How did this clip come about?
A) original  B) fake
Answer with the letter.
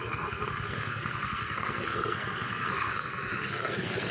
B